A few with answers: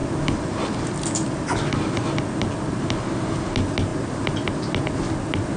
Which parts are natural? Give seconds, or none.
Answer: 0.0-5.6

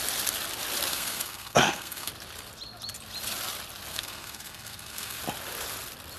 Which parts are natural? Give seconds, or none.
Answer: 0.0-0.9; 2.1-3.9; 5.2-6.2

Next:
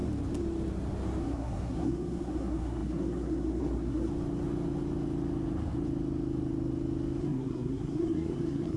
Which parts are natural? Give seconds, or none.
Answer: 0.0-1.2; 4.1-7.2